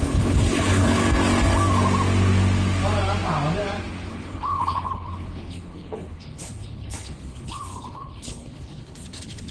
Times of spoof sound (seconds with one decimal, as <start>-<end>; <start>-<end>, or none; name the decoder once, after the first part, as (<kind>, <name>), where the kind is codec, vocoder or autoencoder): 0.0-1.0 (codec, HILCodec); 4.1-9.5